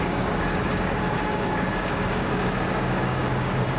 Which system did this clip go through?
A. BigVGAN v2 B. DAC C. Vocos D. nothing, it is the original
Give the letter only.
B